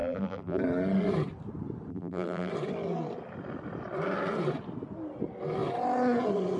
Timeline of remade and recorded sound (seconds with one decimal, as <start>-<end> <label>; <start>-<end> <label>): 0.0-0.6 remade; 0.6-1.9 recorded; 1.9-2.5 remade; 2.5-6.6 recorded